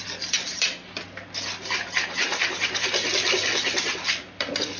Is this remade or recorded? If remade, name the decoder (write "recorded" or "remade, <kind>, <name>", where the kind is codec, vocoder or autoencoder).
recorded